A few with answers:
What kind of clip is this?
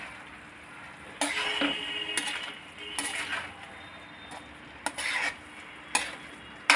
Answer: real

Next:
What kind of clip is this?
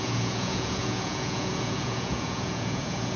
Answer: fake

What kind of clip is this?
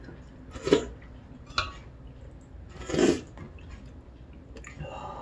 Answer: real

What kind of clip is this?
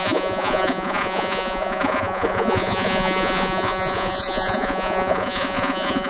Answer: fake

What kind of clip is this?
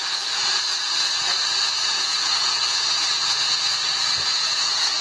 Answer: fake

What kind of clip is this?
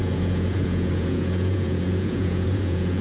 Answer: fake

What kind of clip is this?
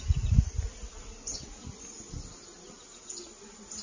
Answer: real